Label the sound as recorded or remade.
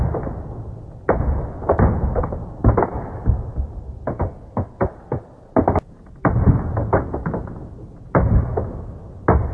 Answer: recorded